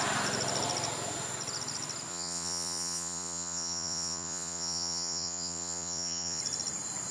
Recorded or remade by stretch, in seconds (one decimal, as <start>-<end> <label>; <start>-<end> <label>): 0.0-2.1 recorded; 2.1-6.4 remade; 6.4-7.1 recorded